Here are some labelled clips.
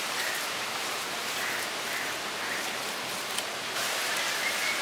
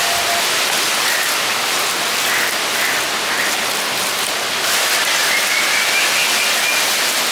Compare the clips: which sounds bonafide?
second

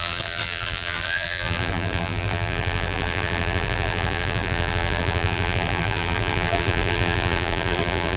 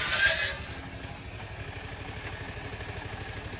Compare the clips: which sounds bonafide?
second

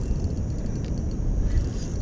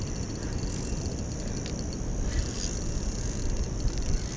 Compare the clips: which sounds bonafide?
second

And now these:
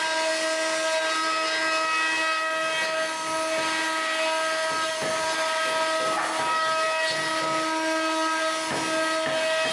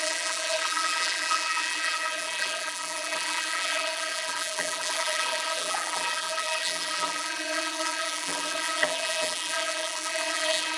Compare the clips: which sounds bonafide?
first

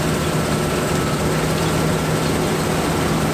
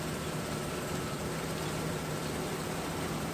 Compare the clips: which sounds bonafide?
first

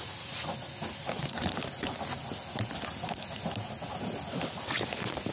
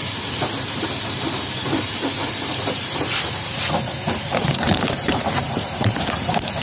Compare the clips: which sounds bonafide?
first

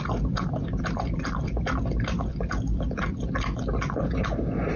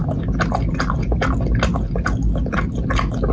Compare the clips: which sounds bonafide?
second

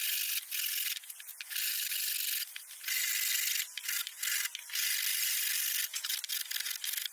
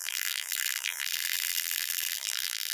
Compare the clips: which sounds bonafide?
first